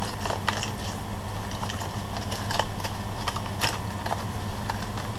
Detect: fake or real real